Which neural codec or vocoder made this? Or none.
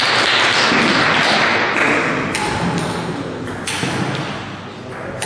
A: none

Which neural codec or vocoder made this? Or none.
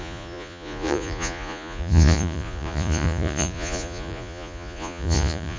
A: vocoder, Vocos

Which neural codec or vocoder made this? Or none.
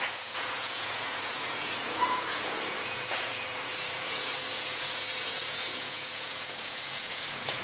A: vocoder, Vocos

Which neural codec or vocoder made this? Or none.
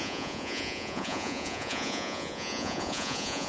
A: vocoder, Vocos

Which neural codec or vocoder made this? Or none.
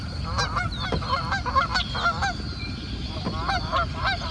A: none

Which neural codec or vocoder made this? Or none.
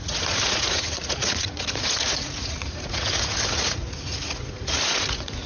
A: vocoder, Vocos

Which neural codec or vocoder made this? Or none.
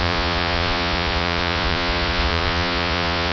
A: vocoder, Vocos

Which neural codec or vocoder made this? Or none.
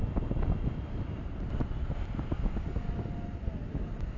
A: none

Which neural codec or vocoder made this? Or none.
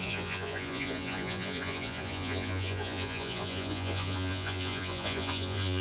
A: vocoder, Vocos